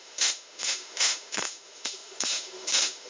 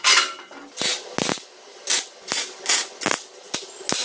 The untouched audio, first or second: second